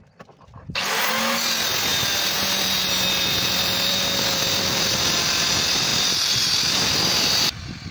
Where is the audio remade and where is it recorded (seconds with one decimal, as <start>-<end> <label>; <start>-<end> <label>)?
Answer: 0.0-1.9 recorded; 1.9-5.5 remade; 5.5-5.9 recorded; 5.9-7.9 remade